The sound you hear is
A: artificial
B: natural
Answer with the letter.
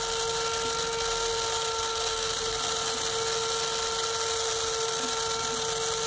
B